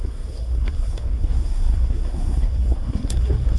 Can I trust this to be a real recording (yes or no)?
no